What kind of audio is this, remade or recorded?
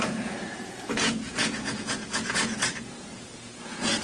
remade